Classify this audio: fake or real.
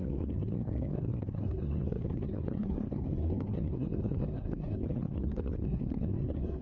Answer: fake